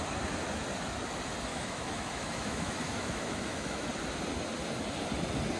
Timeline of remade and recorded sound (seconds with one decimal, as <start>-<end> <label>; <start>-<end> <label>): 0.0-1.5 recorded; 1.5-3.9 remade; 3.9-5.6 recorded